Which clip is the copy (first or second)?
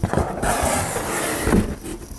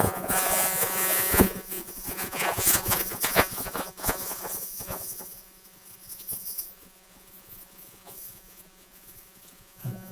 second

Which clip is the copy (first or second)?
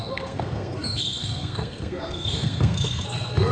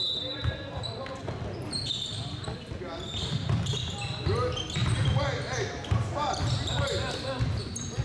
first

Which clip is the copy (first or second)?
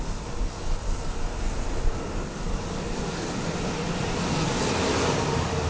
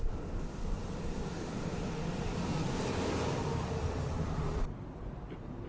second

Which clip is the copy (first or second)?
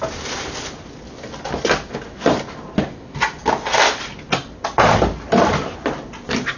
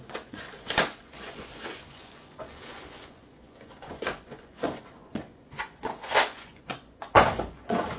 second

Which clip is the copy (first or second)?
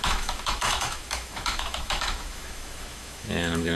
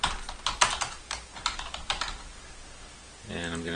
first